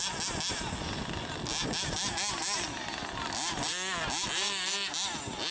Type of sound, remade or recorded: recorded